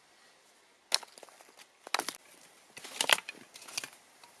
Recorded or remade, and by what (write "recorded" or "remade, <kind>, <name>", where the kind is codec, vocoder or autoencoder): recorded